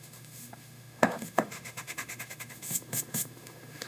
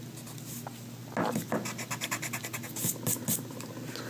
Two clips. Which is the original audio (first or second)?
second